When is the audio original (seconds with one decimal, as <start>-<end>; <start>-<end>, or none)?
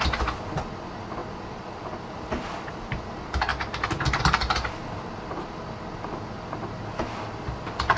0.0-1.2; 1.8-8.0